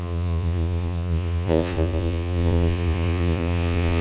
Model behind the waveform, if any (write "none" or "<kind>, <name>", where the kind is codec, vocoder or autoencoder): vocoder, Vocos